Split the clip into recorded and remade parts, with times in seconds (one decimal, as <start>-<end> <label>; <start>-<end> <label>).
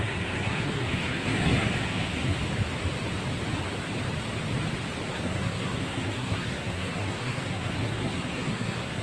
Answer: 0.0-2.4 remade; 2.4-5.1 recorded; 5.1-9.0 remade